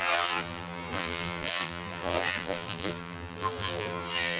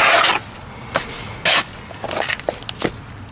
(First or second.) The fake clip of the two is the first